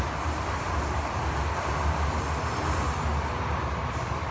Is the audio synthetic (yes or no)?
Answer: no